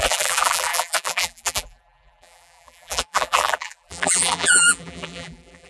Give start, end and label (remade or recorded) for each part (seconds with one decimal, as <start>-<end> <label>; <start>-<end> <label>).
0.0-5.7 remade